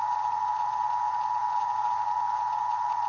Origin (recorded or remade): remade